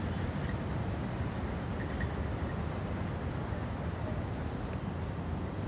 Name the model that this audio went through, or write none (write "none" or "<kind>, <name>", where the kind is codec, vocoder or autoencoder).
none